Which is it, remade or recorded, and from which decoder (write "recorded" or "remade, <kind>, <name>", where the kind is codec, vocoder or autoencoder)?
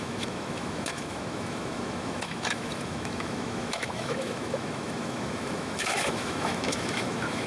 remade, autoencoder, DAC-VAE